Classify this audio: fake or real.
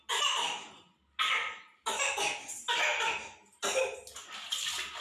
real